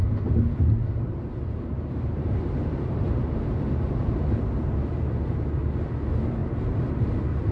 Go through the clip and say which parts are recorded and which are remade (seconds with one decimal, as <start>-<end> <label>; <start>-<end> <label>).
0.0-0.8 recorded; 0.8-3.9 remade; 3.9-6.4 recorded; 6.4-6.9 remade; 6.9-7.5 recorded